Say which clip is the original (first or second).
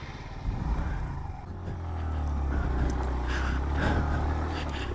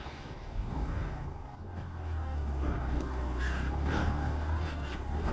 first